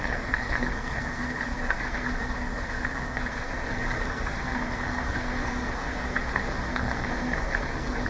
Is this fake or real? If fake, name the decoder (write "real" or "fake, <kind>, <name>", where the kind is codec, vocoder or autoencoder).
fake, codec, SNAC